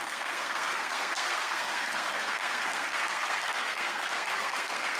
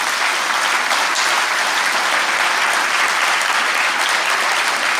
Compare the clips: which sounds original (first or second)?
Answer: second